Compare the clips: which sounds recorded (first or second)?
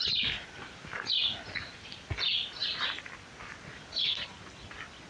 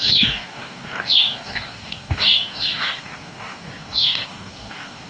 first